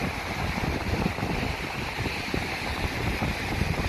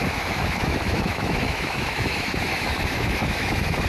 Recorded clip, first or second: first